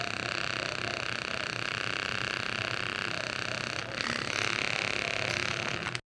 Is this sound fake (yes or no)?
no